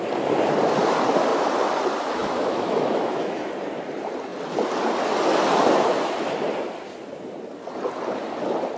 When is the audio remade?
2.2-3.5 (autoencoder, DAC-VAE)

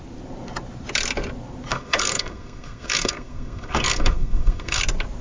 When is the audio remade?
1.7-4.8 (codec, SNAC)

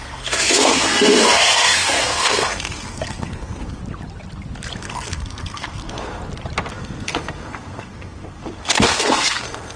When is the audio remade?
0.0-3.8 (codec, SNAC); 4.8-6.2; 6.7-9.8

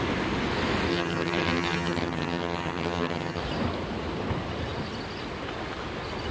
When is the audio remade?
0.9-3.4 (vocoder, HiFi-GAN)

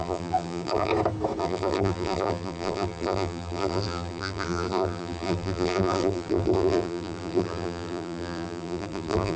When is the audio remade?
0.0-0.9 (vocoder, BigVGAN v2); 1.4-9.4

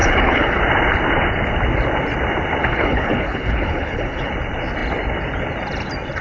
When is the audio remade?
0.0-0.6 (codec, HILCodec); 2.6-4.3

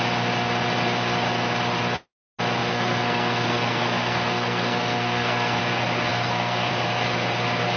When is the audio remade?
2.7-5.6 (codec, SNAC); 6.1-6.7

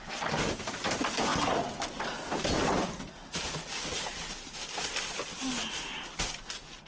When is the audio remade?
none